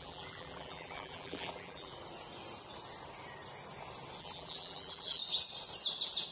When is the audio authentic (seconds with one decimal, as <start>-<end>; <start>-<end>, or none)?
1.9-4.2; 5.2-6.3